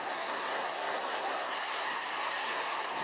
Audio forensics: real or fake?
fake